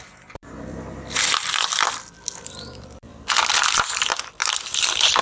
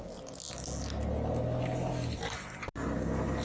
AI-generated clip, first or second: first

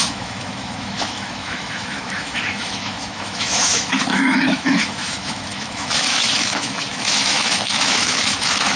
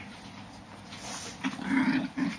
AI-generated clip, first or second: first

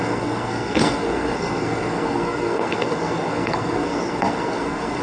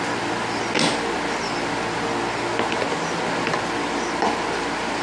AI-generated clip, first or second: first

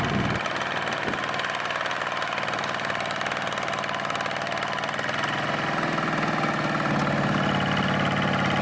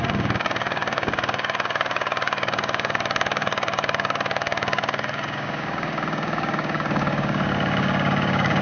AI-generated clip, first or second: second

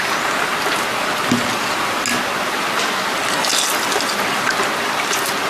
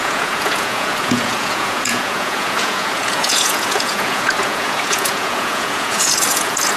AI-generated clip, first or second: second